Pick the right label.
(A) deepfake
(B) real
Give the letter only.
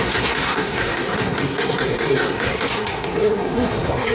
A